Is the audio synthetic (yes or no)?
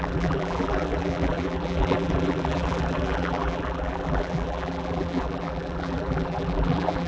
yes